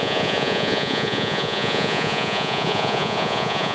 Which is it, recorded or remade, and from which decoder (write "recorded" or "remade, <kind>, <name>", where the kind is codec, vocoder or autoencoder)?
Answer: remade, vocoder, Vocos